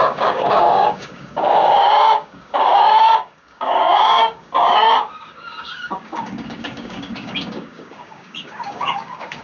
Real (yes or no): no